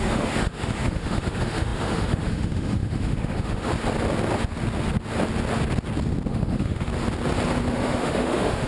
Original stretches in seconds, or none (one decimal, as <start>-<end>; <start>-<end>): 3.7-6.3; 6.9-7.7